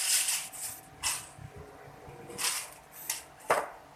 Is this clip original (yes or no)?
yes